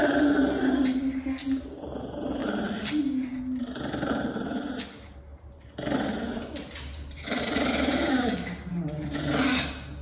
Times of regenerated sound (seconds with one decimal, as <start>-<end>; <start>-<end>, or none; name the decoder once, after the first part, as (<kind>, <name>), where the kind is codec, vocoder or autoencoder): 2.4-3.0 (vocoder, BigVGAN v2); 8.7-9.3